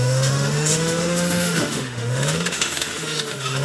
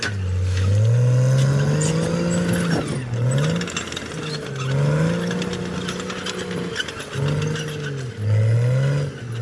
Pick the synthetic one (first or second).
first